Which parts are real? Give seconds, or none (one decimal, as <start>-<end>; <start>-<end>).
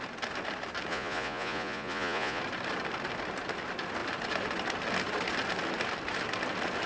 0.0-0.9; 2.4-6.9